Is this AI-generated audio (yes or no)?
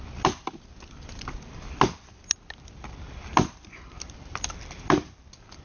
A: yes